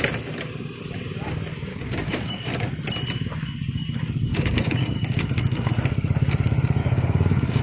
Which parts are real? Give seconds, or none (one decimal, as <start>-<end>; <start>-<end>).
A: 0.0-1.7; 2.4-4.3; 5.7-6.8